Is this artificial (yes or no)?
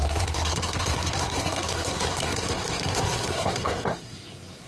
yes